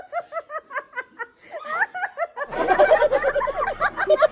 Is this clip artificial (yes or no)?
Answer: no